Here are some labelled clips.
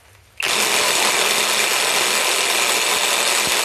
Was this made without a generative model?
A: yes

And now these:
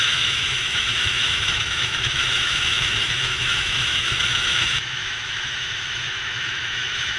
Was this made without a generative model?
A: no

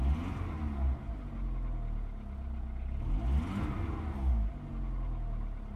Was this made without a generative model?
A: yes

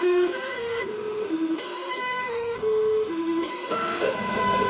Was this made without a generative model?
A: no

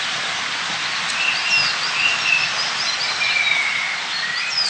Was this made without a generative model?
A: yes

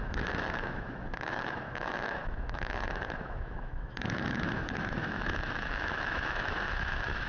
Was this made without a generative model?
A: no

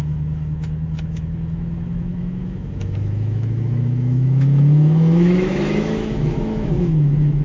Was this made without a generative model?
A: no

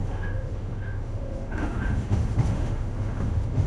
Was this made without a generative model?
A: no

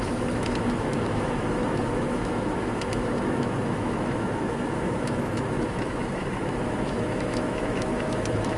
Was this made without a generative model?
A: no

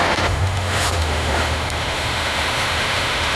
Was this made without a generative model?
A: no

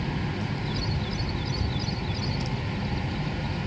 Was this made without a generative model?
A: yes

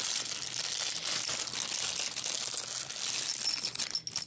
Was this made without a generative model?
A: yes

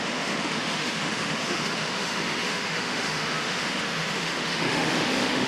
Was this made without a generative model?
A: no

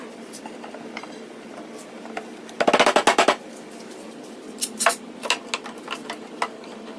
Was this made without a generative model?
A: yes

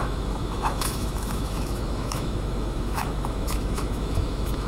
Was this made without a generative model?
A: no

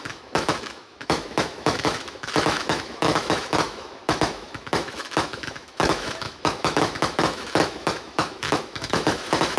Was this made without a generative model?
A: no